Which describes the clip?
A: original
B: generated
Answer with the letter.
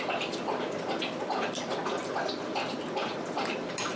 B